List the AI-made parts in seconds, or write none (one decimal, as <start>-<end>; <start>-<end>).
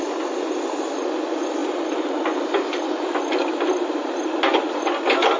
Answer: none